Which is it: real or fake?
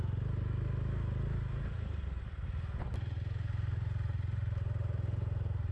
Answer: real